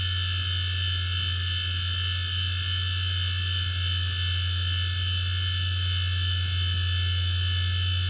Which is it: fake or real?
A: real